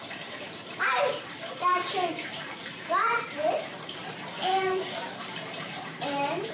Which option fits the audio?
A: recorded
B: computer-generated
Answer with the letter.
B